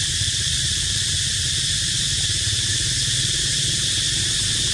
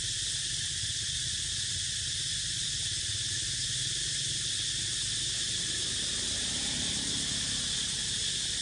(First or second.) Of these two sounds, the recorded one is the second